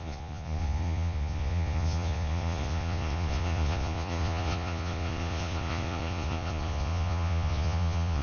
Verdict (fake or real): fake